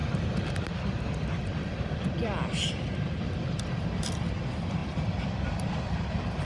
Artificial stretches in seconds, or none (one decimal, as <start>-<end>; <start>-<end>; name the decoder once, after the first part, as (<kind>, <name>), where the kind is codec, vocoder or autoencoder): 0.0-2.8 (vocoder, BigVGAN v2); 4.8-6.0